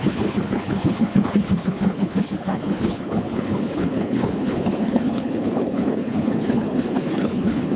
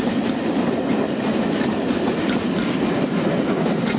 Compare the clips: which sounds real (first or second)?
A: second